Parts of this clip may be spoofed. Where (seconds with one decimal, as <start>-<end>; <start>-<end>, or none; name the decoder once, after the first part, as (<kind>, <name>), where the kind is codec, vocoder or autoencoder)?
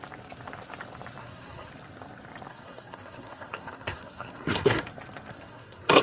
1.2-1.7 (codec, SNAC); 2.5-4.8; 5.3-6.0